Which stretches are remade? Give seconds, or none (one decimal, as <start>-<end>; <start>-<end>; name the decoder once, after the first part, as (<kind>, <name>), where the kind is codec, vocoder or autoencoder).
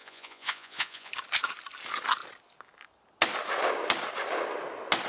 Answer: 0.0-1.1 (vocoder, Vocos)